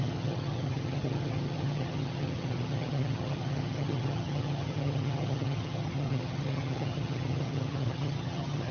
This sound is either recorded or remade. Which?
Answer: remade